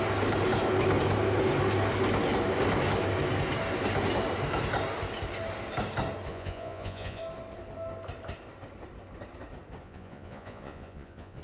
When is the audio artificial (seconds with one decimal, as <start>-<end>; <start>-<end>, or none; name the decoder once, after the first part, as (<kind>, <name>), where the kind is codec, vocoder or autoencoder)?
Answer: 6.3-7.2 (vocoder, Vocos); 9.8-11.4